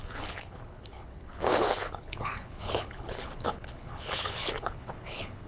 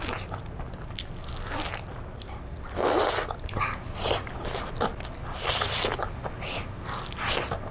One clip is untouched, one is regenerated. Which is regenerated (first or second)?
first